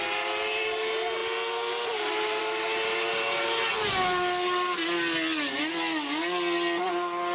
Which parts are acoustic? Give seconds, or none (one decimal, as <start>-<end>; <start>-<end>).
0.0-7.3